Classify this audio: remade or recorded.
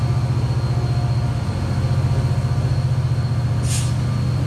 recorded